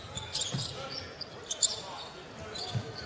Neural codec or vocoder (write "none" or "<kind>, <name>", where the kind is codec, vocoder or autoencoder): none